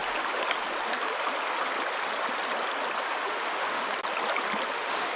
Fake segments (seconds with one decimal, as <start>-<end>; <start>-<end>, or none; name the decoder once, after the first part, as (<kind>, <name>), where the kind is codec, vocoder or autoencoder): 3.1-3.8 (autoencoder, DAC-VAE); 4.7-5.2

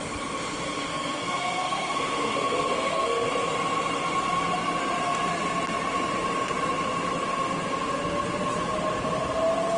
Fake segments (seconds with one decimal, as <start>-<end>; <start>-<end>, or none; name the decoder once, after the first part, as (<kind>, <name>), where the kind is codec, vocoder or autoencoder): 0.9-3.3 (codec, SNAC)